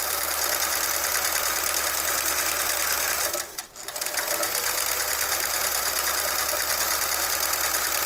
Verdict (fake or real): real